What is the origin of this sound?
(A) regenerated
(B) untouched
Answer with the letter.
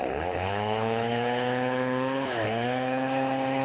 A